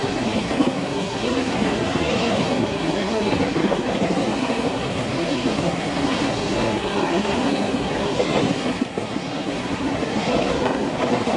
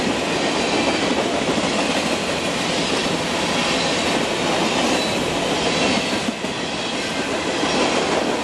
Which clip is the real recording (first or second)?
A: second